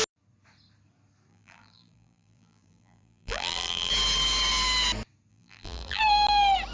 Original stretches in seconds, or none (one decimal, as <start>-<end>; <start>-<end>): 0.0-1.3; 3.9-5.3; 6.0-6.7